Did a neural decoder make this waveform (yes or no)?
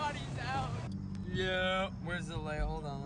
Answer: no